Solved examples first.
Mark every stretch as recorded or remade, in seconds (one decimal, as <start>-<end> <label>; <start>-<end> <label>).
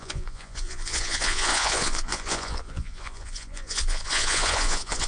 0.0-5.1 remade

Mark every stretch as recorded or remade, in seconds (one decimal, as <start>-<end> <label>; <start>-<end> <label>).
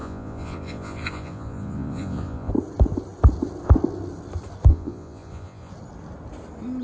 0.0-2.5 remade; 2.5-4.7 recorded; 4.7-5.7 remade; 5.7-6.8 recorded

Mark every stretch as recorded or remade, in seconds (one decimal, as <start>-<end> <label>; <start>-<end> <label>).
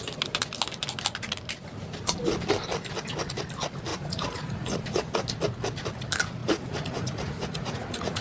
0.0-3.9 recorded; 3.9-5.1 remade; 5.1-6.4 recorded; 6.4-8.2 remade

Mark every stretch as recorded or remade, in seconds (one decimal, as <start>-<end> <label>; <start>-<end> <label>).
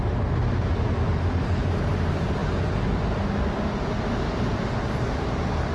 0.0-5.7 recorded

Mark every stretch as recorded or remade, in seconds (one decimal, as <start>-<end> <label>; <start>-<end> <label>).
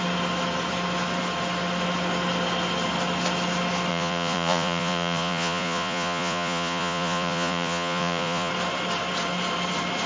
0.0-3.9 recorded; 3.9-8.5 remade; 8.5-10.1 recorded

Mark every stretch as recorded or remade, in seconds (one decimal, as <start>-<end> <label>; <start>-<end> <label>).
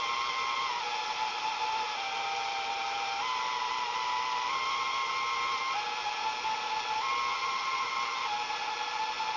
0.0-7.3 recorded; 7.3-7.9 remade; 7.9-9.4 recorded